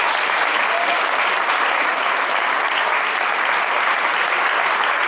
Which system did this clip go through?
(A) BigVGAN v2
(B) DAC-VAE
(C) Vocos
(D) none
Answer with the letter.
A